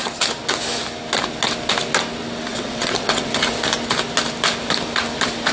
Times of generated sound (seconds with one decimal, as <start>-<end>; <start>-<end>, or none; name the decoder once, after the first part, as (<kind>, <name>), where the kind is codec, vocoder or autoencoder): 2.5-3.3 (vocoder, WaveNeXt)